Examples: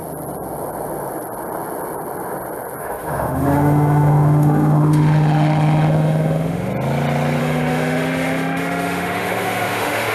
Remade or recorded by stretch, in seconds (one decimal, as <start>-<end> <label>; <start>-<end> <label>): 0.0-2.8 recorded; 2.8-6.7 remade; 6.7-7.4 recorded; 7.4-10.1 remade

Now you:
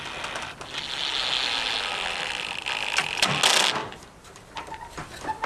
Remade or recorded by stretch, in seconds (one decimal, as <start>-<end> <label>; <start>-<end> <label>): 0.0-3.8 recorded; 3.8-4.8 remade; 4.8-5.5 recorded

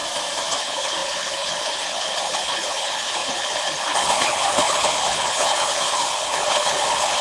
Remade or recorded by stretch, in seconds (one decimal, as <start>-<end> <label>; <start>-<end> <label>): 0.0-0.6 recorded; 0.6-7.2 remade